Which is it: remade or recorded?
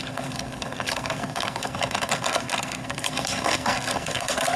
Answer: remade